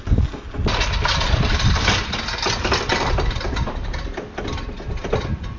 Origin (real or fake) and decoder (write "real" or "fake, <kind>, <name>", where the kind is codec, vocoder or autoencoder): real